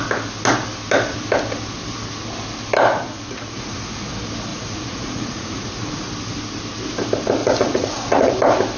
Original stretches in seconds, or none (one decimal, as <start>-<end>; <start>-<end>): 0.0-2.9; 4.1-4.5; 6.1-7.4; 8.3-8.8